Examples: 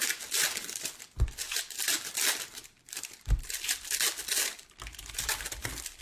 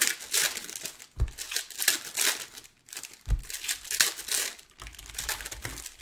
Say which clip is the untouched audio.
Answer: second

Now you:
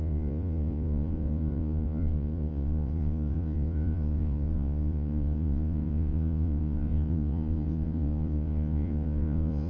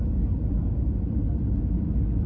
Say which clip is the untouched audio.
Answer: second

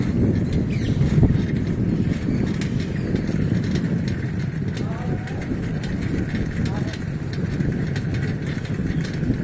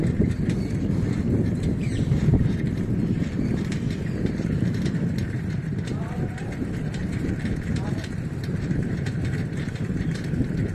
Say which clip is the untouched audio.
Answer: first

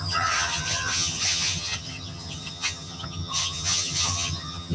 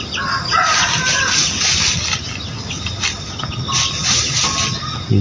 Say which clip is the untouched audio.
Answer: second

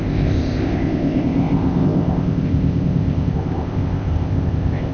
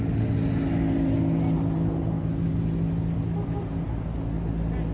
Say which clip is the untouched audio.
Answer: second